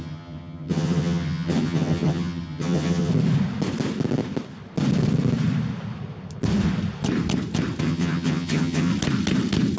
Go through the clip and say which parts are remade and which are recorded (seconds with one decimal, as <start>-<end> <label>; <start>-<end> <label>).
0.0-3.1 remade; 3.1-7.8 recorded; 7.8-8.9 remade; 8.9-9.8 recorded

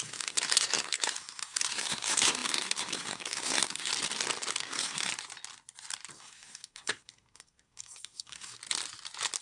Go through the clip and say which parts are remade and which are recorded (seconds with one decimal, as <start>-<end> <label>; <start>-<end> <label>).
0.0-3.9 remade; 3.9-4.5 recorded; 4.5-5.1 remade; 5.1-6.1 recorded; 6.1-8.6 remade; 8.6-9.4 recorded

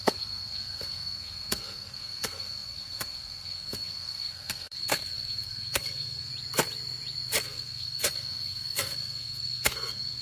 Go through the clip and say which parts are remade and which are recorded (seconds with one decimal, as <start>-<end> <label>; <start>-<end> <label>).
0.0-6.3 remade; 6.3-7.4 recorded; 7.4-10.2 remade

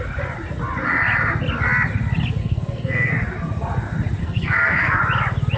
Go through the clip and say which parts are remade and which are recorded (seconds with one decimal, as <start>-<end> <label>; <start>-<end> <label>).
0.0-2.4 recorded; 2.4-3.1 remade; 3.1-4.2 recorded; 4.2-5.0 remade; 5.0-5.6 recorded

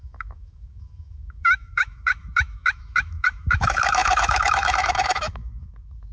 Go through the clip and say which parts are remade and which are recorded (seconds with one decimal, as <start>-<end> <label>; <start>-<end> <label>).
0.0-6.1 remade

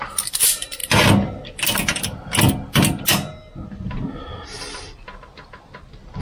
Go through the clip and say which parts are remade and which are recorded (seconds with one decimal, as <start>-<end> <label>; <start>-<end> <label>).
0.0-6.2 recorded

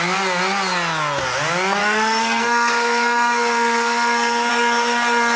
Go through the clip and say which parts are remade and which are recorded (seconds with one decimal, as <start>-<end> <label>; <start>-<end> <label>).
0.0-1.8 recorded; 1.8-4.5 remade; 4.5-5.4 recorded